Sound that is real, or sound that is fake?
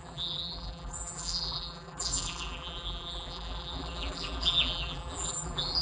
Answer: fake